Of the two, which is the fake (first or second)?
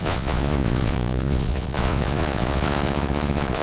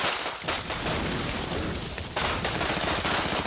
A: first